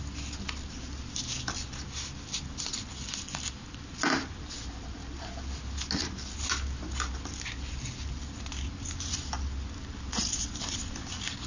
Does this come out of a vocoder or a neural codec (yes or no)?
no